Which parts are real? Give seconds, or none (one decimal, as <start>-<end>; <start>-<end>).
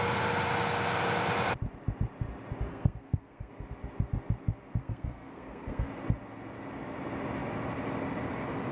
0.0-2.7; 3.5-4.8; 5.9-8.7